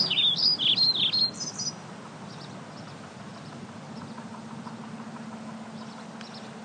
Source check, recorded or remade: recorded